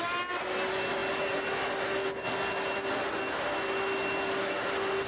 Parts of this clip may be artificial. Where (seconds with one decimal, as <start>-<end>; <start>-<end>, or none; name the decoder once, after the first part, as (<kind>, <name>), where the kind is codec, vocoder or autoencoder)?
none